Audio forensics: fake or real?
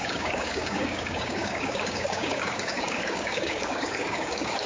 fake